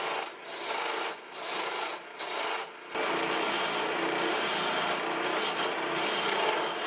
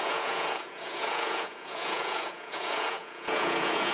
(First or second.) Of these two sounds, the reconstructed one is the second